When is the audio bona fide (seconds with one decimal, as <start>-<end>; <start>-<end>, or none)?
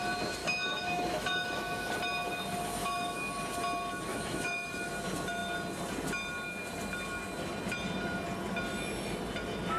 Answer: 0.0-0.4; 1.9-2.8; 3.3-4.1; 4.9-9.8